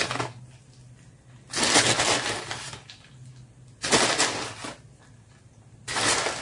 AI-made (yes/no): no